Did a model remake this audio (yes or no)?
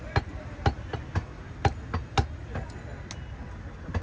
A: no